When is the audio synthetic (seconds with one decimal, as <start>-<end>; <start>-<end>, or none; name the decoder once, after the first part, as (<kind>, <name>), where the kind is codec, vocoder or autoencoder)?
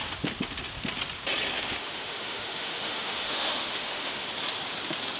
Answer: 1.5-4.3 (autoencoder, DAC-VAE)